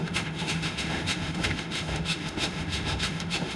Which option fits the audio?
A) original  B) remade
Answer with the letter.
B